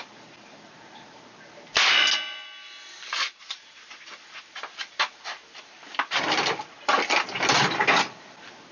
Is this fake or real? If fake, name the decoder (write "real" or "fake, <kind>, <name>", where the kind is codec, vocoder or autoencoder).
real